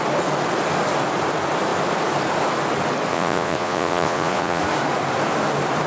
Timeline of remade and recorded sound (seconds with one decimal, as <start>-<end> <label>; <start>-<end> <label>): 0.0-3.1 recorded; 3.1-4.6 remade; 4.6-5.9 recorded